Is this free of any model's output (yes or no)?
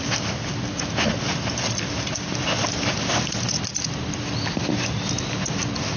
no